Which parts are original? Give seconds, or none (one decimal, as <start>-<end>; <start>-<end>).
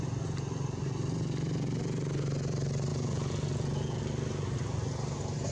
0.0-2.9; 4.0-5.5